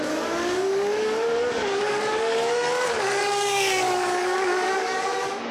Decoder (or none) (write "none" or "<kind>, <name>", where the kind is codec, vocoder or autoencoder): codec, DAC